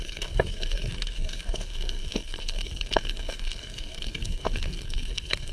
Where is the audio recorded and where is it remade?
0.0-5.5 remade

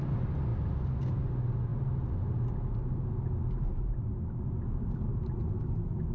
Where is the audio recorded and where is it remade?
0.0-6.1 recorded

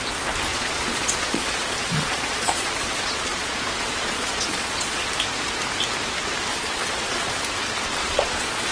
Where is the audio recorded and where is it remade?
0.0-0.5 recorded; 0.5-5.1 remade; 5.1-6.5 recorded; 6.5-7.4 remade; 7.4-8.0 recorded; 8.0-8.7 remade

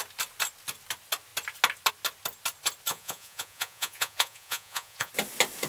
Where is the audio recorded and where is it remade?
0.0-2.9 recorded; 2.9-5.1 remade; 5.1-5.7 recorded

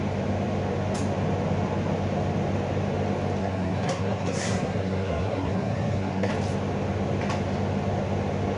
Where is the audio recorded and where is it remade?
0.0-3.4 recorded; 3.4-6.3 remade; 6.3-8.6 recorded

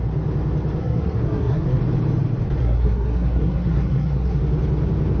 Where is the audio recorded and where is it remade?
0.0-0.8 recorded; 0.8-1.8 remade; 1.8-2.6 recorded; 2.6-4.4 remade; 4.4-5.2 recorded

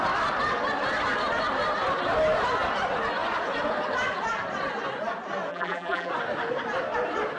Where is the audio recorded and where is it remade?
0.0-5.5 recorded; 5.5-6.1 remade; 6.1-7.4 recorded

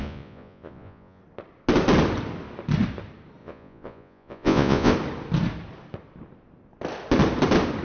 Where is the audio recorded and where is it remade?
0.0-1.2 remade; 1.2-3.4 recorded; 3.4-4.9 remade; 4.9-7.8 recorded